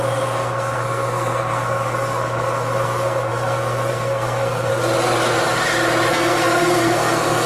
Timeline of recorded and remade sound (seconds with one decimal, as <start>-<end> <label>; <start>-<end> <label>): 0.0-4.7 remade; 4.7-6.1 recorded; 6.1-7.5 remade